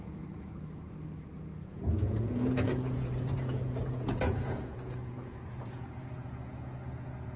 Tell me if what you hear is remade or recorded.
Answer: remade